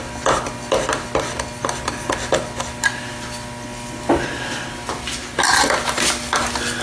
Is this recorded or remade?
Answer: recorded